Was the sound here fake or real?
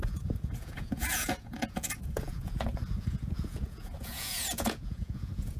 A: fake